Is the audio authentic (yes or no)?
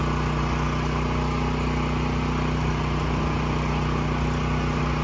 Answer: yes